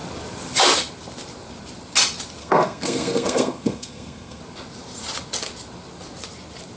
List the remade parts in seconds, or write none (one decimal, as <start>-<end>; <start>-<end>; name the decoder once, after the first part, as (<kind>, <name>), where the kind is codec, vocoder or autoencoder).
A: 2.4-4.4 (codec, SNAC)